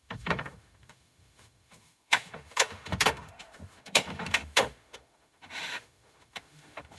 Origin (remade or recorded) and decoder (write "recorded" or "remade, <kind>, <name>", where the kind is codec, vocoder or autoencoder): remade, autoencoder, DAC-VAE